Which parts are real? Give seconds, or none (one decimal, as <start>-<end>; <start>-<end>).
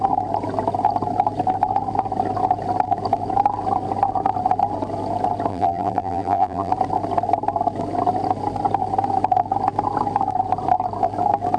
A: 0.0-5.5; 6.7-11.6